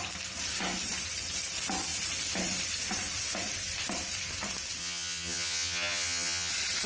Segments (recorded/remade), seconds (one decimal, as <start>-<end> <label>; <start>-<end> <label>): 0.0-4.8 recorded; 4.8-6.5 remade; 6.5-6.9 recorded